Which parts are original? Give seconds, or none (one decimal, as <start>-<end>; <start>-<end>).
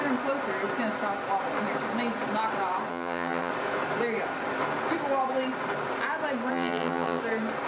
0.0-2.9; 3.5-6.5; 7.2-7.7